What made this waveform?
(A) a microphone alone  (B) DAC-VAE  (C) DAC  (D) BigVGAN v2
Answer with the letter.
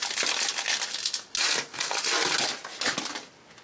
A